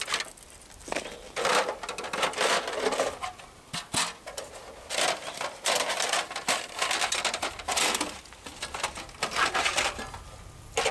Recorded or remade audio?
recorded